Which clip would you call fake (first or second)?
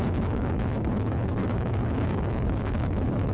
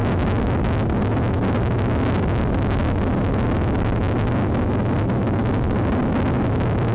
first